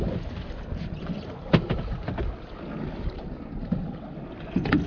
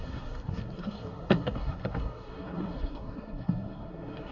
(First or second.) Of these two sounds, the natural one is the first